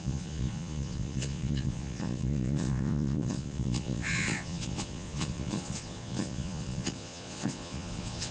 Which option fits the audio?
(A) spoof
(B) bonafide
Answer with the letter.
A